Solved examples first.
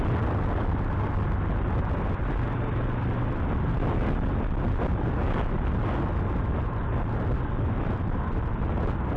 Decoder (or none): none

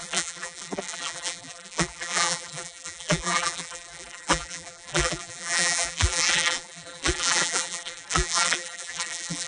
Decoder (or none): vocoder, BigVGAN v2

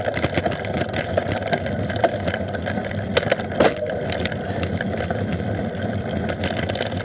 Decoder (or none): vocoder, BigVGAN v2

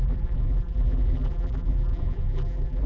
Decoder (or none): vocoder, BigVGAN v2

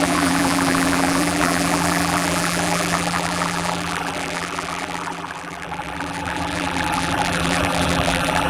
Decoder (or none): vocoder, BigVGAN v2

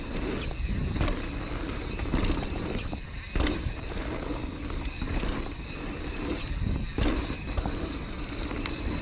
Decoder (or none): none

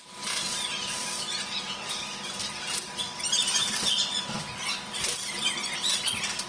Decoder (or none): none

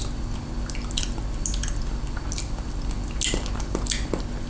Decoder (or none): none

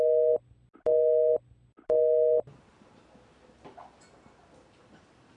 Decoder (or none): none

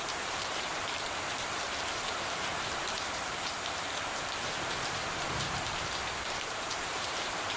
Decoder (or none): vocoder, BigVGAN v2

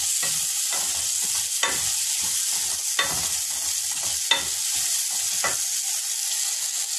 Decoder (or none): none